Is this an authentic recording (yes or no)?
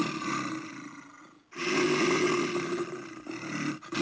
yes